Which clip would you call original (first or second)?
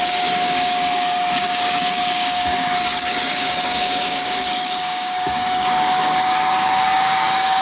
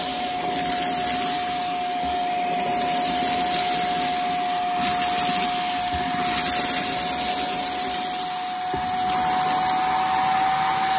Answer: second